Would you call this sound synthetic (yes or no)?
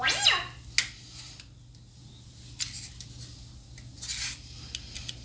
no